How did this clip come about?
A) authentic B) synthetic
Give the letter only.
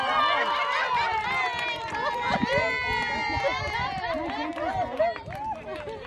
A